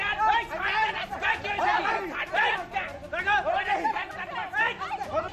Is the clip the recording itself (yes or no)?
yes